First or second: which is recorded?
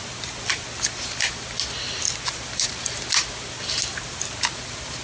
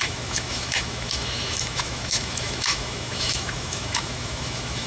first